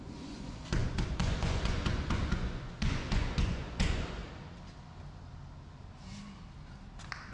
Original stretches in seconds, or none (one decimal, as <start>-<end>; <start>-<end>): 4.2-7.3